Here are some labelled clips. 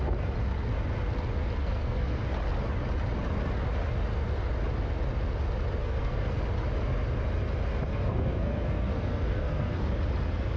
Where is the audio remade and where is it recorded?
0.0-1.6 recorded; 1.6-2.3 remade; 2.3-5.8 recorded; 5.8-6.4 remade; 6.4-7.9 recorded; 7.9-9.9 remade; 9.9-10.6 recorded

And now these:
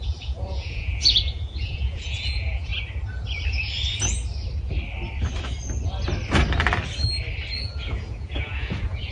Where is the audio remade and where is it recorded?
0.0-2.7 remade; 2.7-7.6 recorded; 7.6-9.1 remade

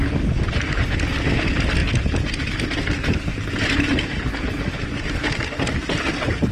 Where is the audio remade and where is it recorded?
0.0-6.5 recorded

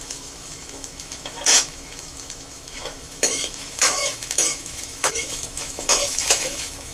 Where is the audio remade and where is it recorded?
0.0-6.9 remade